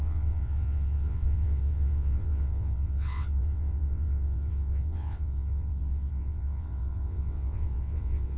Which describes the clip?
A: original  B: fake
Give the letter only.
B